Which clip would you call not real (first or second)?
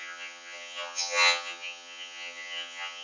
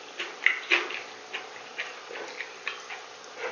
first